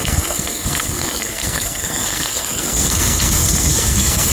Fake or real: fake